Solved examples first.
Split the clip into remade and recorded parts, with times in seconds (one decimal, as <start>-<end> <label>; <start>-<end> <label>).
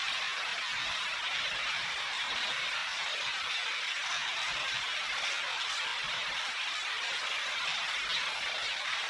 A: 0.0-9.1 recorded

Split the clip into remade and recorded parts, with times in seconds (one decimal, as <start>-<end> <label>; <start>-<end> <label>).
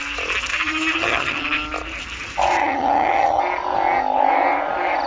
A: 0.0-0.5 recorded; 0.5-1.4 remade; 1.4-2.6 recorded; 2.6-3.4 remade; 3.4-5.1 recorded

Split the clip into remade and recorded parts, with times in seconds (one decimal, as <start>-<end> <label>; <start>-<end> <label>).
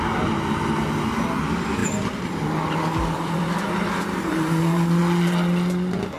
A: 0.0-1.8 recorded; 1.8-4.3 remade; 4.3-6.2 recorded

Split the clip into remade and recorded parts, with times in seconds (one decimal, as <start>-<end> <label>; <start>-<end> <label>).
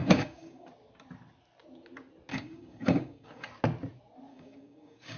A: 0.0-0.7 remade; 0.7-2.3 recorded; 2.3-3.5 remade; 3.5-4.3 recorded; 4.3-5.2 remade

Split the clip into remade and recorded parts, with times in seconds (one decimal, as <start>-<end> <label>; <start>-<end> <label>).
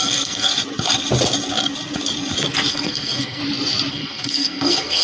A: 0.0-0.5 remade; 0.5-2.7 recorded; 2.7-3.4 remade; 3.4-3.9 recorded; 3.9-5.0 remade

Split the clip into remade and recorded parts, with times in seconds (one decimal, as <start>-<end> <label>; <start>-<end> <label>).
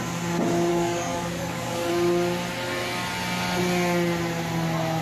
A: 0.0-0.7 recorded; 0.7-1.9 remade; 1.9-5.0 recorded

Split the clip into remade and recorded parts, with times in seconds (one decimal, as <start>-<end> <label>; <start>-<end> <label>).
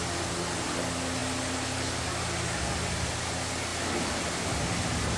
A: 0.0-5.2 recorded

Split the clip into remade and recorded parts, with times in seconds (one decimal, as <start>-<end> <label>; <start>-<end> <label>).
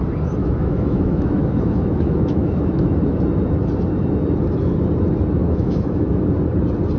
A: 0.0-0.4 recorded; 0.4-3.2 remade; 3.2-5.4 recorded; 5.4-6.3 remade; 6.3-7.0 recorded